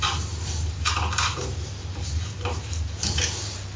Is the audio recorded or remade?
remade